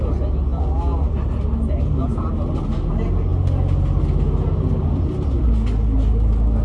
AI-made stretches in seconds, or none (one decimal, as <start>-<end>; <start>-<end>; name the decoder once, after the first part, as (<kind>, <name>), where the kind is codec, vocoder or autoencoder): none